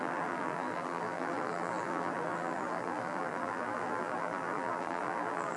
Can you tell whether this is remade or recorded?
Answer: remade